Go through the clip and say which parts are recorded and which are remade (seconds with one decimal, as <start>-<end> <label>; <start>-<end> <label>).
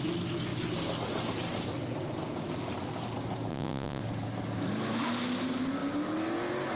0.0-3.5 recorded; 3.5-4.0 remade; 4.0-6.8 recorded